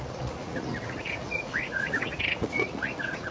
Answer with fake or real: fake